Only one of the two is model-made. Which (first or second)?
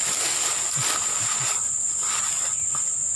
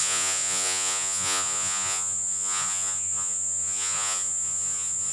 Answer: second